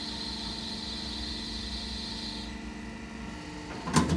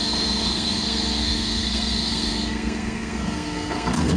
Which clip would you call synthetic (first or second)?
second